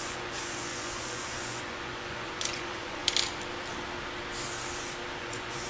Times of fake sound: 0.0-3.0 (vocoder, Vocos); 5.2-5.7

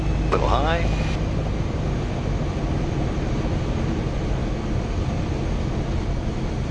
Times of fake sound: none

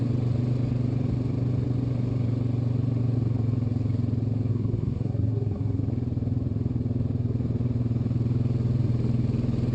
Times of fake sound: 4.5-5.8 (codec, SNAC)

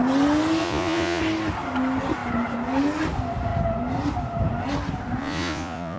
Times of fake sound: 0.6-1.2 (vocoder, Vocos); 5.2-6.0

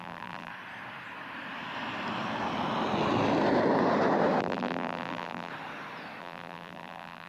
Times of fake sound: 0.0-0.5 (vocoder, BigVGAN v2); 4.4-5.5; 6.2-7.3

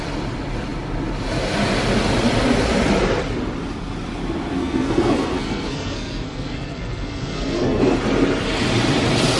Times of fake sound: 4.6-7.8 (codec, SNAC)